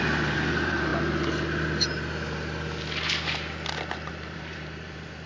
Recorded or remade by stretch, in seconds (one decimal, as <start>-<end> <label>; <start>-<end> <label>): 0.0-0.9 remade; 0.9-4.1 recorded; 4.1-5.3 remade